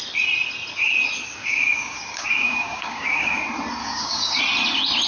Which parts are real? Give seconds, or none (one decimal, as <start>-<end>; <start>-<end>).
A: 0.0-1.4; 3.3-3.8; 4.4-5.1